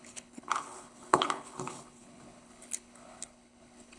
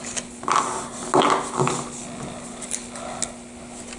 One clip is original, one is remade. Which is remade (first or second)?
first